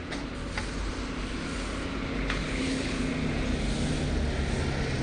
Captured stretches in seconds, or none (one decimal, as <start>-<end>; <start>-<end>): 0.0-2.1; 3.0-5.0